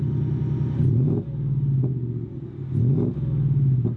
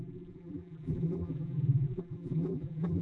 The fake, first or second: second